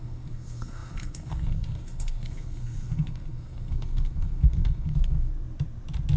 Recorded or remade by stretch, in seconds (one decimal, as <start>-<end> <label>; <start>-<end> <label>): 0.0-5.3 remade; 5.3-6.2 recorded